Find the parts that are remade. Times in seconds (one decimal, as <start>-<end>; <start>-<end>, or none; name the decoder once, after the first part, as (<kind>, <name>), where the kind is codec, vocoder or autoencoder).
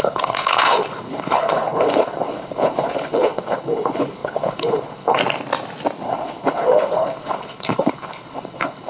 0.0-5.2 (codec, HILCodec); 6.0-8.9